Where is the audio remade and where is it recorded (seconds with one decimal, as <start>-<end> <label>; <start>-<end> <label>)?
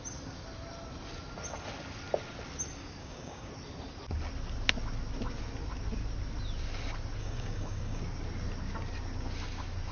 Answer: 0.0-3.0 recorded; 3.0-3.5 remade; 3.5-7.2 recorded; 7.2-8.0 remade; 8.0-9.9 recorded